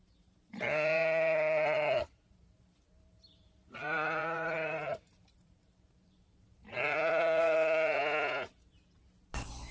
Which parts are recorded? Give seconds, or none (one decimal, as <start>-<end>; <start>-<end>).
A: 8.0-8.7